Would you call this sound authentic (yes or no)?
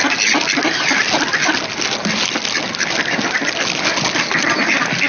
yes